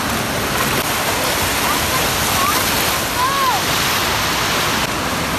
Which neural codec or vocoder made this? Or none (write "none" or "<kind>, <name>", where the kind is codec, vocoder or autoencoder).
none